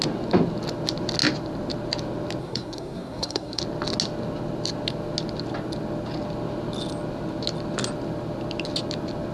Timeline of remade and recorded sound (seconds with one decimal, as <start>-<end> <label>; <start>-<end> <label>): 0.0-2.4 recorded; 2.4-3.6 remade; 3.6-9.3 recorded